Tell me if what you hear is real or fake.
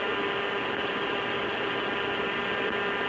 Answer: real